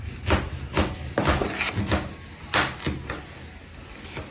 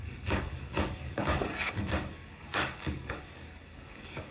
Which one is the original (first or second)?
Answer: first